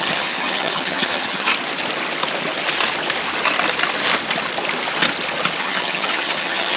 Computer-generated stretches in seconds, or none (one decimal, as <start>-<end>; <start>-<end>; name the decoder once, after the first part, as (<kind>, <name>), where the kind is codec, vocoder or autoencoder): 0.0-1.5 (vocoder, HiFi-GAN); 5.6-6.8